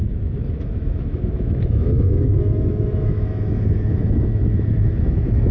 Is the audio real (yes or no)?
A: no